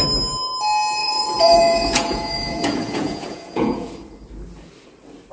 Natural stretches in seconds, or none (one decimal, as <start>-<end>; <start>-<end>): 0.0-1.0; 3.9-5.3